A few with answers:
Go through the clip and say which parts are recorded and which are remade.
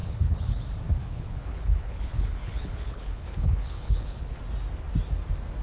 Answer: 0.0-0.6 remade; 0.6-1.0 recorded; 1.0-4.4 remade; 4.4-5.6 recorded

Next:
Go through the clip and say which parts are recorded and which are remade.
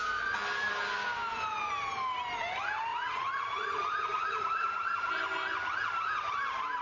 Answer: 0.0-2.9 recorded; 2.9-5.1 remade; 5.1-6.8 recorded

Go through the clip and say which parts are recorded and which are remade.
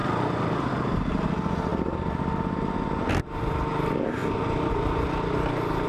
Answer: 0.0-5.9 recorded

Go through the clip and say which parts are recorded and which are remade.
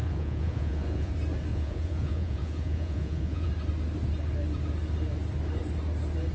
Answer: 0.0-1.1 remade; 1.1-1.5 recorded; 1.5-3.5 remade; 3.5-6.3 recorded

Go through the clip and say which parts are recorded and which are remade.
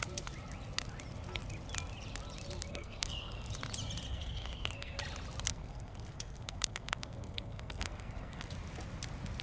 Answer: 0.0-2.7 recorded; 2.7-3.5 remade; 3.5-4.1 recorded; 4.1-5.0 remade; 5.0-5.5 recorded; 5.5-8.5 remade; 8.5-9.4 recorded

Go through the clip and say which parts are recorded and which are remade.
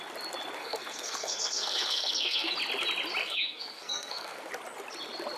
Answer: 0.0-0.6 recorded; 0.6-2.5 remade; 2.5-3.2 recorded; 3.2-4.5 remade; 4.5-5.4 recorded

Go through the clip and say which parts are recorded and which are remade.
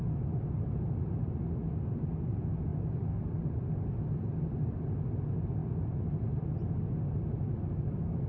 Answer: 0.0-2.7 recorded; 2.7-4.6 remade; 4.6-5.6 recorded; 5.6-6.6 remade; 6.6-8.3 recorded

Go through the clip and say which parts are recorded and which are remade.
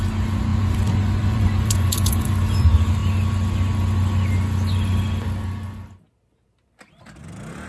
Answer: 0.0-0.5 recorded; 0.5-2.3 remade; 2.3-7.7 recorded